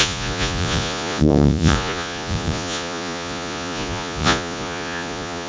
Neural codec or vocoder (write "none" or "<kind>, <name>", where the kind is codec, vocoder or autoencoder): vocoder, Vocos